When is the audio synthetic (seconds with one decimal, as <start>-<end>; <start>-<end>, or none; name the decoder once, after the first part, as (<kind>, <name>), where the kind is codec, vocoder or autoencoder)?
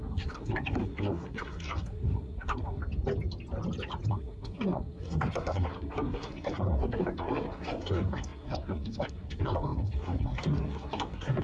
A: 0.0-2.8 (codec, SNAC); 4.1-11.4